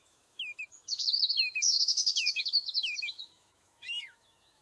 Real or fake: fake